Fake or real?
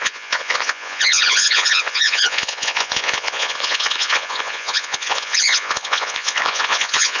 fake